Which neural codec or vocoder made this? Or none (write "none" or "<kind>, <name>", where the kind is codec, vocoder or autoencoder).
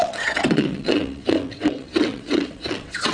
vocoder, WaveNeXt